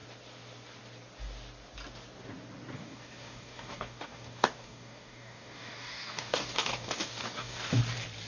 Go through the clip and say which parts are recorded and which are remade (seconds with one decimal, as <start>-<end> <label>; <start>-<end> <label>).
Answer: 0.0-2.8 recorded; 2.8-7.8 remade; 7.8-8.3 recorded